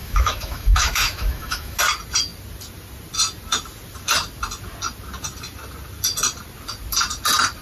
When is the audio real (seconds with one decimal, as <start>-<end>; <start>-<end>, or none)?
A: 1.8-7.6